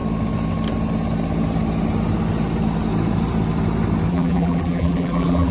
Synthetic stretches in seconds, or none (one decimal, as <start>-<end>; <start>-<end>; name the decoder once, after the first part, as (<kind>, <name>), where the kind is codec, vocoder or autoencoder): 4.1-5.5 (vocoder, BigVGAN v2)